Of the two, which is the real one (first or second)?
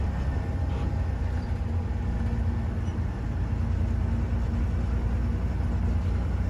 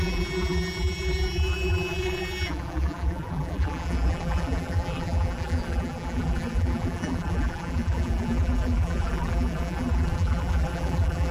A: first